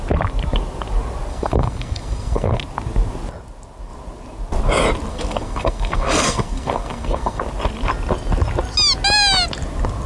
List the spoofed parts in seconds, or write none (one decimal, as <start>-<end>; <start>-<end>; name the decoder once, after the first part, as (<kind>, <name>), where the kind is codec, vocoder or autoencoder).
1.3-2.6 (codec, SNAC); 5.1-7.4